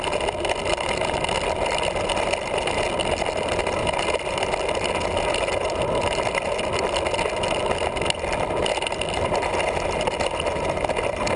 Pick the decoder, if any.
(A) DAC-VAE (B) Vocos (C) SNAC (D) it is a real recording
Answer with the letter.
D